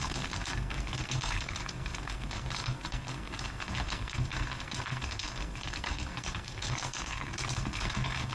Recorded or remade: remade